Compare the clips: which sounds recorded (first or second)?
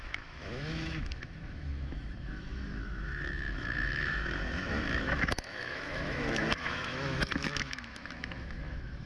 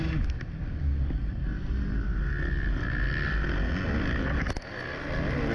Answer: second